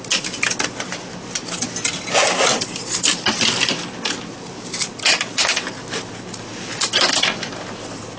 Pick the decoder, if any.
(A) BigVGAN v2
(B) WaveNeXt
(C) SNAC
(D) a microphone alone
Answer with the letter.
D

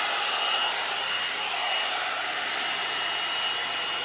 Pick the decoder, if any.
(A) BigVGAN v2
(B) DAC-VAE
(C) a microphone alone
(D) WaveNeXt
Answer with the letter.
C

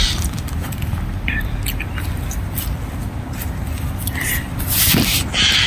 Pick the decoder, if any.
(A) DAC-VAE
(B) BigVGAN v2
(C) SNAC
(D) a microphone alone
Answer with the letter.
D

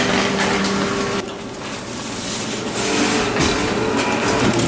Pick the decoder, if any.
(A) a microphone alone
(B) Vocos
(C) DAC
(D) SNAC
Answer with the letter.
A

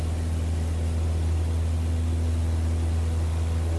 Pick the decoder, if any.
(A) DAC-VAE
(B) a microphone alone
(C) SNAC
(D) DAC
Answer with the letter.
B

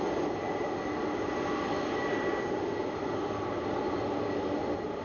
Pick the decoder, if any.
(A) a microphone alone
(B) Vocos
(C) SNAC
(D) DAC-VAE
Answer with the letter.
A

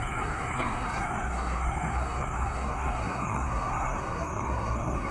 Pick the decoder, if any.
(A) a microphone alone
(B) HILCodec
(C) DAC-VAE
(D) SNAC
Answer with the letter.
D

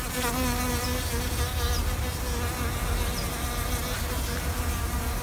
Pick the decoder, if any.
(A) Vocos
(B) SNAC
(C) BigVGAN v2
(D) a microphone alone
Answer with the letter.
D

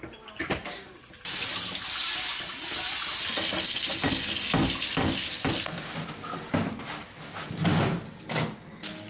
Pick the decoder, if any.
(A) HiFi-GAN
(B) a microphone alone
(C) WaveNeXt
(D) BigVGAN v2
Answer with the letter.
B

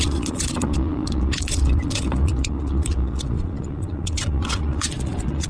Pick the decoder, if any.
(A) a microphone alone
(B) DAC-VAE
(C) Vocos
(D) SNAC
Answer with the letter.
C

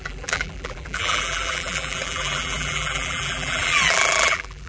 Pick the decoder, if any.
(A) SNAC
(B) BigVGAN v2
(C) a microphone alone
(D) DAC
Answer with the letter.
B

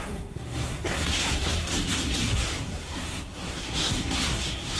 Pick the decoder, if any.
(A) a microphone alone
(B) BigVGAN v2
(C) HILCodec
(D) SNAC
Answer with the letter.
D